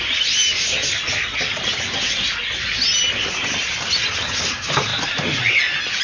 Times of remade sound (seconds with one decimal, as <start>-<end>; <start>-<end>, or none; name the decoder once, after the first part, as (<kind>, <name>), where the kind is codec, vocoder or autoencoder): none

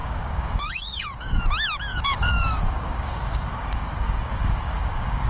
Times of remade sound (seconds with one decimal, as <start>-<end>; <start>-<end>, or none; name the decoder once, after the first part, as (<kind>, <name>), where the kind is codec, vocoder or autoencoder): 0.0-1.4 (codec, DAC); 1.9-5.3

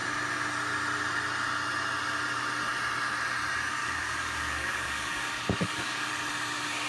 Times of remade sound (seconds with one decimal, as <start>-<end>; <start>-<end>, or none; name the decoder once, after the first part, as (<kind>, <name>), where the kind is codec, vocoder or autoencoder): 3.8-6.1 (codec, DAC)